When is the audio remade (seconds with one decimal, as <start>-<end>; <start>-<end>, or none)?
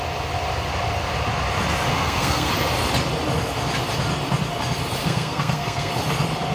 1.9-2.5; 5.0-5.9